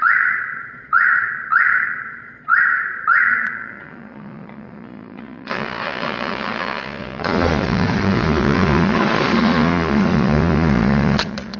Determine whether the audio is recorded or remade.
remade